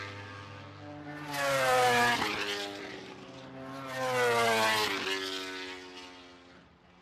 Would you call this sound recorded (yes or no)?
yes